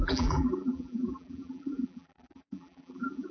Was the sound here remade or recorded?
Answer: remade